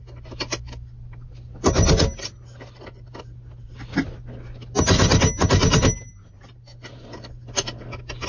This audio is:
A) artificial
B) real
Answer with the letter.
B